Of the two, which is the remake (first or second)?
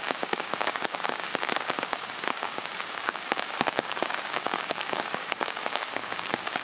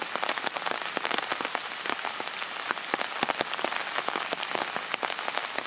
first